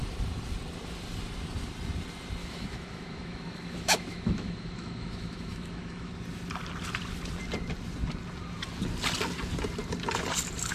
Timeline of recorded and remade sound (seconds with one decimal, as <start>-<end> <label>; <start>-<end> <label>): 0.0-2.4 recorded; 2.4-6.1 remade; 6.1-10.7 recorded